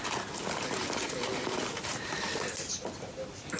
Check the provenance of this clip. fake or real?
real